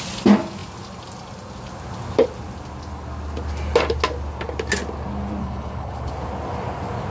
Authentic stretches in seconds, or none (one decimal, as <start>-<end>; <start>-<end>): 0.0-5.4; 6.1-7.1